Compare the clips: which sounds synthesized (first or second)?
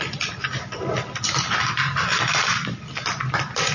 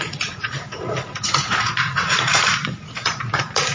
second